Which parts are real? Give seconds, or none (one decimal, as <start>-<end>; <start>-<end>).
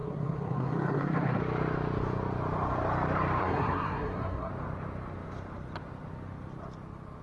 1.4-3.4; 4.5-7.2